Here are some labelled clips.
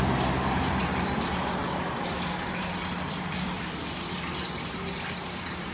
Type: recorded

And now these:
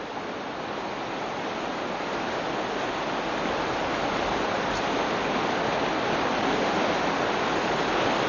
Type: recorded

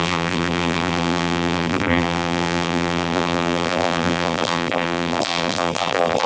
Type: remade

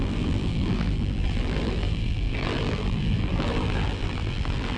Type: remade